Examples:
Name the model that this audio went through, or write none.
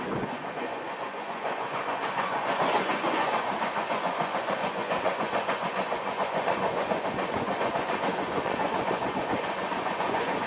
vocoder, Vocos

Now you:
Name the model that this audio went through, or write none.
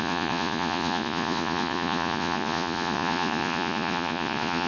vocoder, Vocos